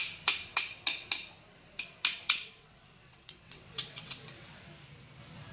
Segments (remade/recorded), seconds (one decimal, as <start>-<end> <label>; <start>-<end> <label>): 0.0-0.5 recorded; 0.5-1.1 remade; 1.1-2.2 recorded; 2.2-4.6 remade; 4.6-5.5 recorded

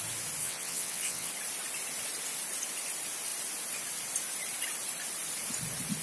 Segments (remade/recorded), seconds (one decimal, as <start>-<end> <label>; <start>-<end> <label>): 0.0-0.4 recorded; 0.4-1.3 remade; 1.3-6.0 recorded

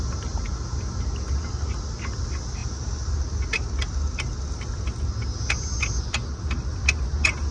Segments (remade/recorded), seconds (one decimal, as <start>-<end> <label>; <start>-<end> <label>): 0.0-7.5 recorded

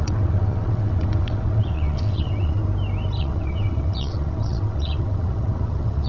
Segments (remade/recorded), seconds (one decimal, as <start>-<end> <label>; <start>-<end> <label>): 0.0-2.6 remade; 2.6-3.2 recorded; 3.2-6.1 remade

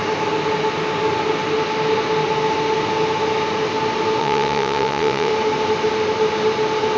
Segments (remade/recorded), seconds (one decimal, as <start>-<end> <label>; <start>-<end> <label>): 0.0-4.2 recorded; 4.2-5.3 remade; 5.3-7.0 recorded